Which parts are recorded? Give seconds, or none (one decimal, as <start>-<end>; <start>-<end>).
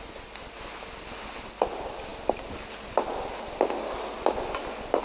0.0-5.0